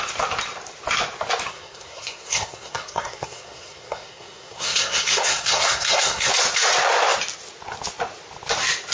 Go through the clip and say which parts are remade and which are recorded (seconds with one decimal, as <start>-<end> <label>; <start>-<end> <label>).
0.0-1.5 recorded; 1.5-6.3 remade; 6.3-8.9 recorded